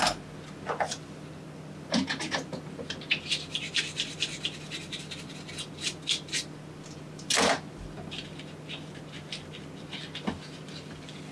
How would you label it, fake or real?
real